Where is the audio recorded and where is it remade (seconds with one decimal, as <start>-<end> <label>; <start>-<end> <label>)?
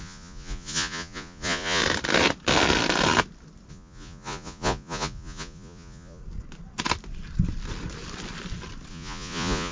0.0-1.8 remade; 1.8-3.7 recorded; 3.7-6.2 remade; 6.2-8.9 recorded; 8.9-9.7 remade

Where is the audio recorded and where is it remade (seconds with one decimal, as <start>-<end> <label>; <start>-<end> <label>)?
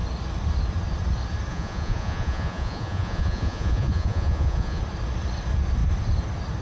0.0-1.5 recorded; 1.5-4.8 remade; 4.8-6.6 recorded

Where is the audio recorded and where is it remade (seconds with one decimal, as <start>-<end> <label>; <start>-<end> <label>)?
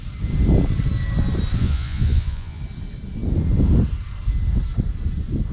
0.0-1.6 recorded; 1.6-2.6 remade; 2.6-5.5 recorded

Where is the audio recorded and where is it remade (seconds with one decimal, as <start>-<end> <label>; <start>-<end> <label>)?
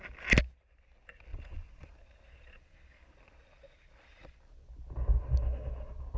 0.0-1.3 recorded; 1.3-1.9 remade; 1.9-6.2 recorded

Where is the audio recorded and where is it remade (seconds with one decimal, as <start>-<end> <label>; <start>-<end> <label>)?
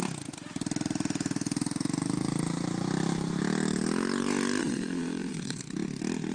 0.0-4.6 recorded; 4.6-5.6 remade; 5.6-6.3 recorded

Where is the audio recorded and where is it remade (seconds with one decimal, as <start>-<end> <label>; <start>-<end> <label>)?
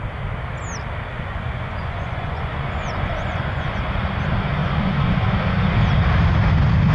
0.0-1.1 recorded; 1.1-3.8 remade; 3.8-4.6 recorded; 4.6-5.4 remade; 5.4-6.9 recorded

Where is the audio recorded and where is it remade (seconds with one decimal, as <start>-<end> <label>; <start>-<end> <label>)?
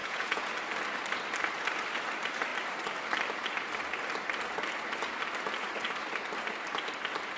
0.0-0.5 remade; 0.5-7.4 recorded